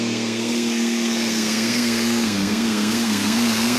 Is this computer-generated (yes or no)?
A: yes